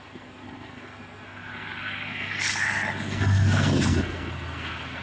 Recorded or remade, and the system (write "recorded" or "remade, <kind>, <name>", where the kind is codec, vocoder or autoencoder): remade, codec, SNAC